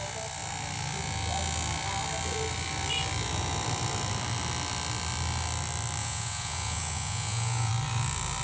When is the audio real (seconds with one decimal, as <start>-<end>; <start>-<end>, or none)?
0.0-6.0; 7.7-8.4

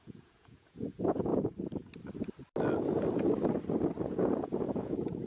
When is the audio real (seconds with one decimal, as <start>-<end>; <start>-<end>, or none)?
1.3-4.0